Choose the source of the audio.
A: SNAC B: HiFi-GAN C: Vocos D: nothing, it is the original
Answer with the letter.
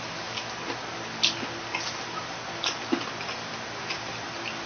D